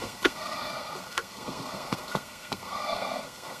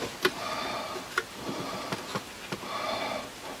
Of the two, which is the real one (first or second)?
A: second